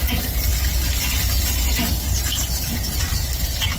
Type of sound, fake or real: real